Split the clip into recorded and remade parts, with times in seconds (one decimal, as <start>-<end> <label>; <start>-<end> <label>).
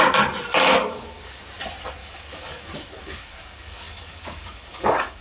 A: 0.0-0.8 recorded; 0.8-1.4 remade; 1.4-2.0 recorded; 2.0-5.2 remade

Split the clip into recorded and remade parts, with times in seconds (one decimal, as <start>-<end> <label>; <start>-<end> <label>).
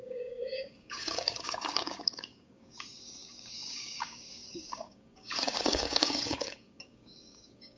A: 0.0-7.8 remade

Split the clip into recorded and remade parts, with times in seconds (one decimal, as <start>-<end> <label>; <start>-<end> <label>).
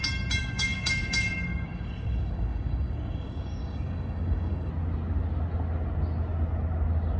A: 0.0-0.4 recorded; 0.4-4.7 remade; 4.7-7.2 recorded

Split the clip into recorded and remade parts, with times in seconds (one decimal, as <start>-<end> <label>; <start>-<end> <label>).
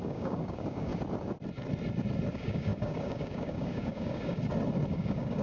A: 0.0-0.9 remade; 0.9-2.3 recorded; 2.3-4.4 remade; 4.4-4.9 recorded; 4.9-5.4 remade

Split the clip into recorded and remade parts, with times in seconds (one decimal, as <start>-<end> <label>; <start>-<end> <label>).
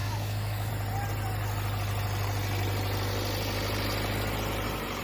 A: 0.0-0.7 remade; 0.7-5.0 recorded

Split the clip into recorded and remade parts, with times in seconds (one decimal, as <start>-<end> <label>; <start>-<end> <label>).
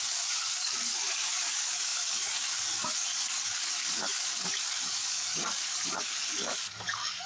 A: 0.0-7.3 remade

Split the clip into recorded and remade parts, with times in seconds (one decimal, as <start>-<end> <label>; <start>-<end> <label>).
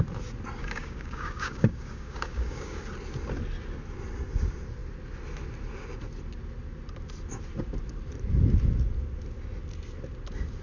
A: 0.0-0.6 recorded; 0.6-2.8 remade; 2.8-10.6 recorded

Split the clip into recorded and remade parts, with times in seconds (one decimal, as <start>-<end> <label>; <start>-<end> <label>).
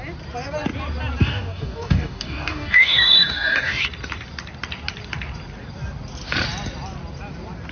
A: 0.0-1.2 recorded; 1.2-3.8 remade; 3.8-7.7 recorded